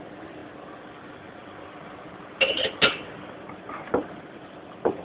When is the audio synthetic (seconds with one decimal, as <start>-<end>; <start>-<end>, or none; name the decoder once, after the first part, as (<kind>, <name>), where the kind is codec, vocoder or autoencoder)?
none